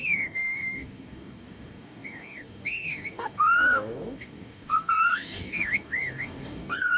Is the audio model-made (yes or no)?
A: yes